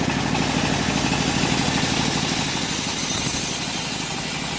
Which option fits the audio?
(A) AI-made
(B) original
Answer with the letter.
B